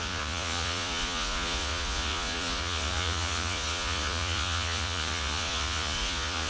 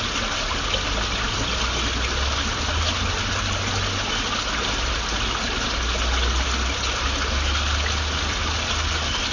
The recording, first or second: second